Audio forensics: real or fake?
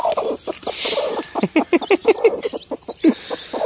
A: real